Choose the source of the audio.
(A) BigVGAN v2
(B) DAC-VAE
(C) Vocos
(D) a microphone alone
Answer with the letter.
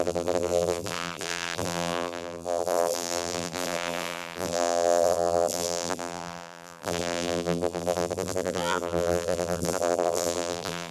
A